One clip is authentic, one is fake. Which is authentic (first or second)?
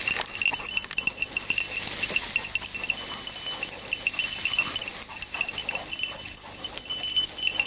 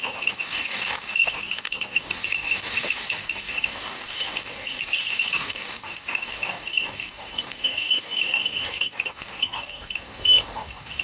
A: first